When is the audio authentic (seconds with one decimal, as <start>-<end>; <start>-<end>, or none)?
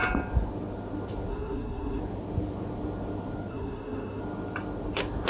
0.0-1.3; 2.0-3.5; 4.2-5.3